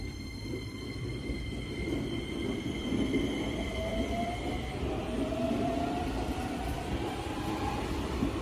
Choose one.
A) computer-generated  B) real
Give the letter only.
A